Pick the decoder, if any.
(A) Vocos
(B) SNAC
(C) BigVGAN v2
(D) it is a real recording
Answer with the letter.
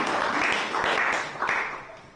D